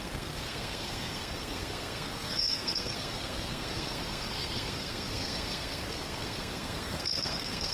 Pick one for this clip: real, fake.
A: fake